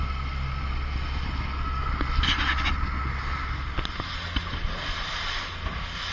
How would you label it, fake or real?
real